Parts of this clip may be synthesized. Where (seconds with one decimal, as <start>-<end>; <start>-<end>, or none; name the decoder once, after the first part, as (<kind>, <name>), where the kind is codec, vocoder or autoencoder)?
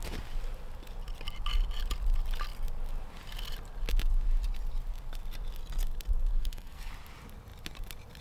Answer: 6.3-6.9 (codec, SNAC)